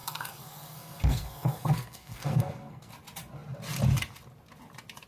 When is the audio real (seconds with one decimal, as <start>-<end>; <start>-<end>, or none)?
2.9-5.1